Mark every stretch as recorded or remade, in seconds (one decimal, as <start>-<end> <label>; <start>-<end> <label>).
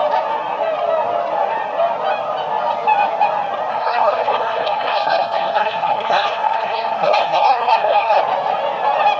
0.0-3.7 recorded; 3.7-8.2 remade; 8.2-9.2 recorded